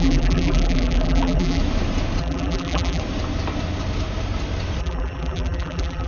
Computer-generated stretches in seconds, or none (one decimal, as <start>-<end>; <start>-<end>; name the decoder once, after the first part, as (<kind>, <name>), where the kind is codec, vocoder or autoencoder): 0.0-1.6 (vocoder, BigVGAN v2); 2.2-3.0; 4.8-6.1